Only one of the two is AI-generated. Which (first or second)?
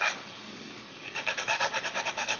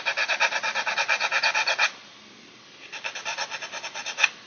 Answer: first